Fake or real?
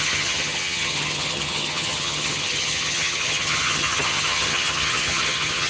fake